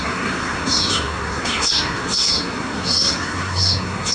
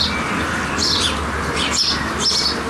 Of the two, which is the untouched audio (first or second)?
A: second